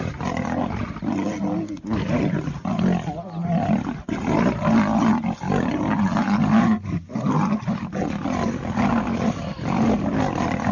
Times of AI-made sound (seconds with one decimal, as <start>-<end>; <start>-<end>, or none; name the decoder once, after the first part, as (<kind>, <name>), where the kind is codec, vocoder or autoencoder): none